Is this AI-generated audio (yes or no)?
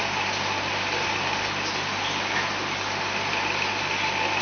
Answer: no